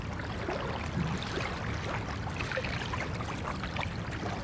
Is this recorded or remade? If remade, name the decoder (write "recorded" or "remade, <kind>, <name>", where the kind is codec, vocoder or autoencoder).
recorded